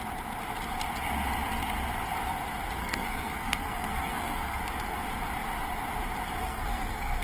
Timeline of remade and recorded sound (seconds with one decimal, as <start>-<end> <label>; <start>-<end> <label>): 0.0-2.8 recorded; 2.8-4.6 remade; 4.6-6.4 recorded; 6.4-7.2 remade